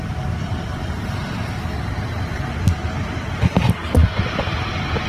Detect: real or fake real